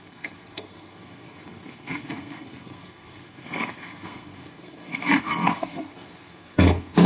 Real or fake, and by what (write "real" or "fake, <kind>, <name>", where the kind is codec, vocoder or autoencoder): fake, codec, SNAC